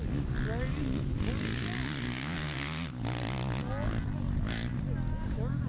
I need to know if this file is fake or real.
real